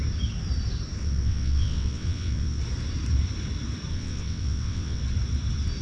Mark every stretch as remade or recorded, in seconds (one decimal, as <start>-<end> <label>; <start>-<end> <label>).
0.0-1.0 recorded; 1.0-2.6 remade; 2.6-3.9 recorded; 3.9-5.0 remade; 5.0-5.8 recorded